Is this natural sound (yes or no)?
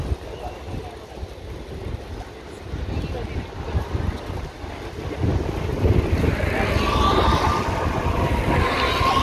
yes